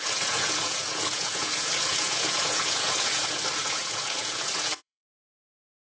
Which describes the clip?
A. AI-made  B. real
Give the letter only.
A